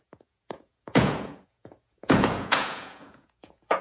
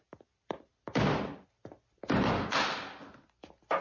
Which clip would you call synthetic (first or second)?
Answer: first